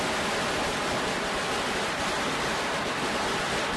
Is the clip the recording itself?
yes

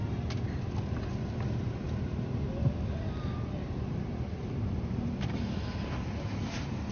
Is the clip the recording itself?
yes